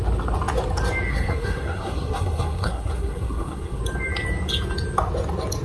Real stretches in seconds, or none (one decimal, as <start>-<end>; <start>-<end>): 0.0-1.1; 3.8-5.6